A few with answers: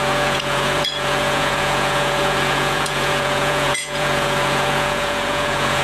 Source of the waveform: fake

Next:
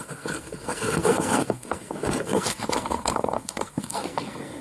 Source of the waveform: fake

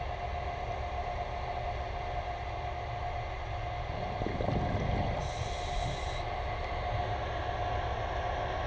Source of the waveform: real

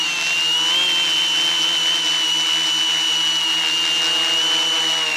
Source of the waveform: real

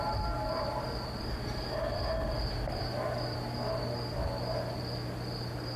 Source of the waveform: real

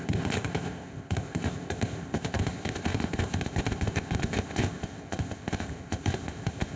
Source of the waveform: fake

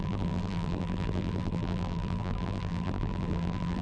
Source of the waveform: fake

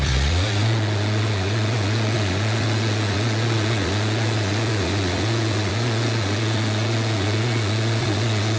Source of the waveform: fake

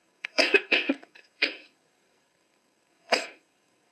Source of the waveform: fake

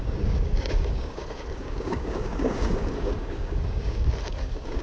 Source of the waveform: fake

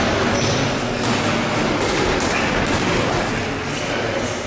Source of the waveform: real